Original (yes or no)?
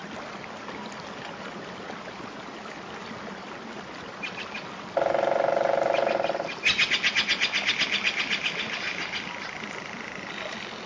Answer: yes